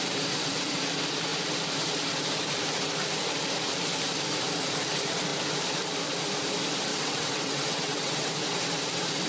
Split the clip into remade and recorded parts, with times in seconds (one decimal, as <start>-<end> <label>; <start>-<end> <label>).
0.0-6.9 recorded; 6.9-8.3 remade; 8.3-9.3 recorded